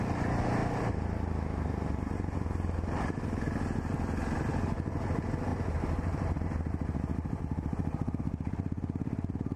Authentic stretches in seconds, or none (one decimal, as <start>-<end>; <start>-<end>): 0.0-0.6; 1.7-5.5; 7.4-9.6